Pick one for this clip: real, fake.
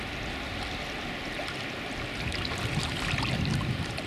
real